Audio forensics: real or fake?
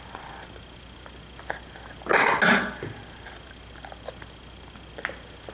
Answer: real